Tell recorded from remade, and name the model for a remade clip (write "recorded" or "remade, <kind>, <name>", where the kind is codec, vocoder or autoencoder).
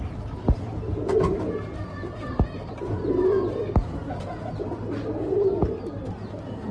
recorded